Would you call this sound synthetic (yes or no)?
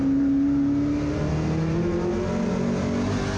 no